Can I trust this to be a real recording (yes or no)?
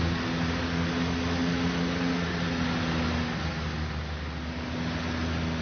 yes